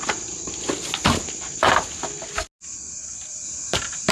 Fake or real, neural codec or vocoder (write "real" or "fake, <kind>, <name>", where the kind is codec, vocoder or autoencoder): real